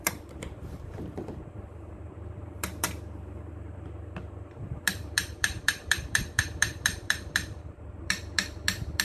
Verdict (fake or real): fake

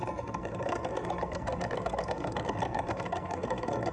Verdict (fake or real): fake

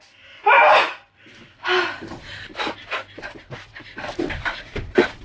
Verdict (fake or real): fake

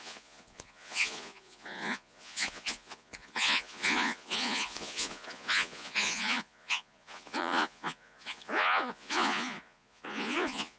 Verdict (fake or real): fake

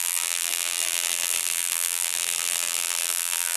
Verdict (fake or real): fake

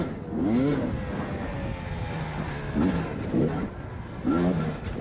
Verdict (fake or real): real